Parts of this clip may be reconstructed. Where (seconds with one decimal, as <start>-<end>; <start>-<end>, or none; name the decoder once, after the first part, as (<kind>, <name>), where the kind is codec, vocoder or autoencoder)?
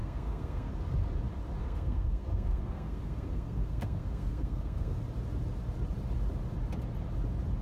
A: 0.0-0.7 (codec, SNAC); 1.6-5.0